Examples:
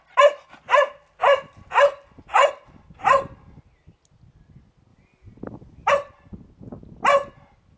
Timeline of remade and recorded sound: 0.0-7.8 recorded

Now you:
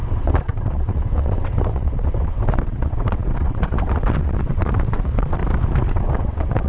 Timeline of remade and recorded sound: 0.0-5.4 remade; 5.4-5.9 recorded; 5.9-6.7 remade

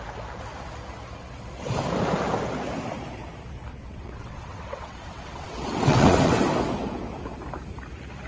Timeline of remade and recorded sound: 0.0-3.7 recorded; 3.7-6.4 remade; 6.4-8.3 recorded

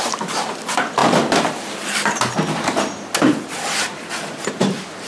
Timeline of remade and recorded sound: 0.0-5.1 recorded

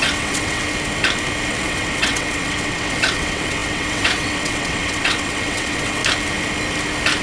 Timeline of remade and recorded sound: 0.0-0.6 remade; 0.6-1.5 recorded; 1.5-6.0 remade; 6.0-7.2 recorded